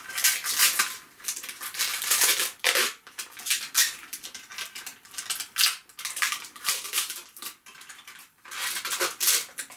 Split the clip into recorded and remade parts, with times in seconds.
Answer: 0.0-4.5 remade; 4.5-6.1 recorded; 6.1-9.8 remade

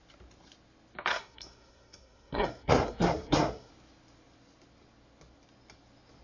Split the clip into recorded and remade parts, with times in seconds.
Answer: 0.0-1.1 recorded; 1.1-3.7 remade; 3.7-6.2 recorded

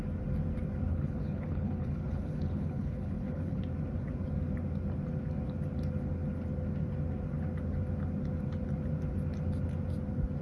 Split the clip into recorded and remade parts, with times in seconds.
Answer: 0.0-0.9 recorded; 0.9-3.6 remade; 3.6-10.4 recorded

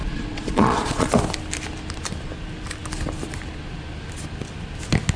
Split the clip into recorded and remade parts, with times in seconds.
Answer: 0.0-1.1 remade; 1.1-5.2 recorded

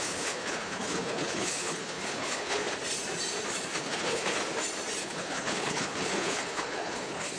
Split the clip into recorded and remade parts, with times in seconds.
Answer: 0.0-2.6 remade; 2.6-3.8 recorded; 3.8-4.4 remade; 4.4-5.0 recorded; 5.0-7.4 remade